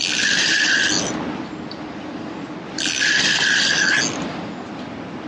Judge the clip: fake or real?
real